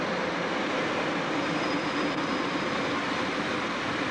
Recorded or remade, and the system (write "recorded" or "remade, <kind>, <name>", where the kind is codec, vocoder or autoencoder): recorded